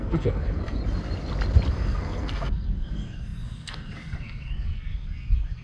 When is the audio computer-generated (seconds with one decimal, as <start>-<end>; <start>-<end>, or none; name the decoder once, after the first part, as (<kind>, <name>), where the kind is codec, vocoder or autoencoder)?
0.0-0.8 (codec, SNAC); 1.7-5.6